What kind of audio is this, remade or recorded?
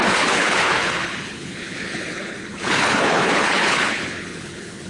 remade